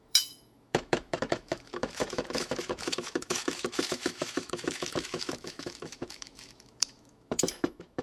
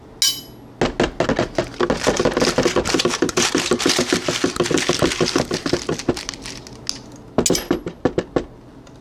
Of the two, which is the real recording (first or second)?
second